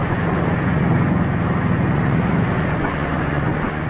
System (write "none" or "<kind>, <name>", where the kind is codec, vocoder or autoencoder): vocoder, Vocos